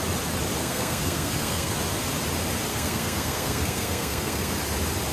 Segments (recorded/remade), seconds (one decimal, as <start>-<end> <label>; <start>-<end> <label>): 0.0-0.6 recorded; 0.6-1.7 remade; 1.7-2.7 recorded; 2.7-4.5 remade; 4.5-5.1 recorded